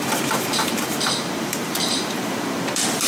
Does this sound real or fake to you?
fake